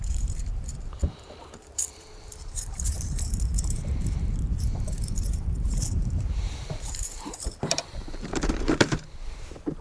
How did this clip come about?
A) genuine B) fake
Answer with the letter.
B